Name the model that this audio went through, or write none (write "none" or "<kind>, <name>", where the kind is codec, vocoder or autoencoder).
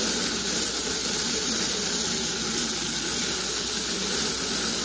none